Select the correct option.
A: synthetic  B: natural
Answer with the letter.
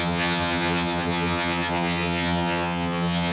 A